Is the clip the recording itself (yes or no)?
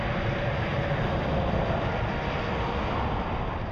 yes